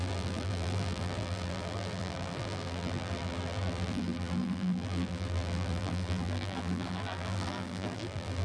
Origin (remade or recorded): remade